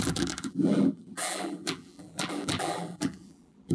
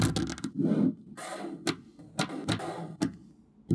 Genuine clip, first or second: second